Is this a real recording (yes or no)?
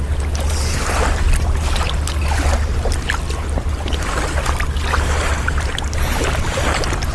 yes